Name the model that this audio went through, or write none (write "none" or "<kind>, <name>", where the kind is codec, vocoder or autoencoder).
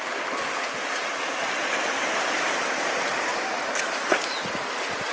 none